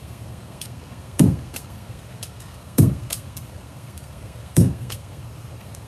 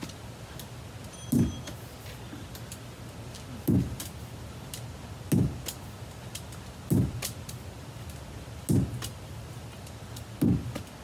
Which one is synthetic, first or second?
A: first